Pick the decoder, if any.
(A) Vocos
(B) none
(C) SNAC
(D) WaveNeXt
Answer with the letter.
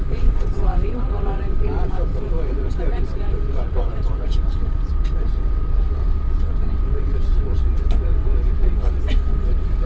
D